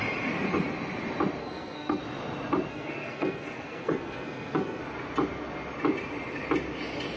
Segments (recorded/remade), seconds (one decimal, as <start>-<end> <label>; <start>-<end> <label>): 0.0-1.4 recorded; 1.4-2.0 remade; 2.0-2.7 recorded; 2.7-4.8 remade; 4.8-7.2 recorded